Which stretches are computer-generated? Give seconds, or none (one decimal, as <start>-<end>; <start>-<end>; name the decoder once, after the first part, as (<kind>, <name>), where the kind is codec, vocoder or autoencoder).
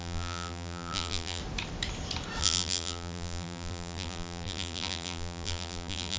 0.0-1.4 (vocoder, BigVGAN v2); 2.4-6.2